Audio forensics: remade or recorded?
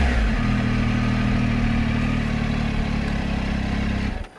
recorded